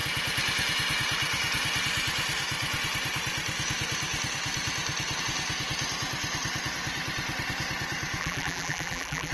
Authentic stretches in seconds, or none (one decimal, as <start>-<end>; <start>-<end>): 0.0-8.2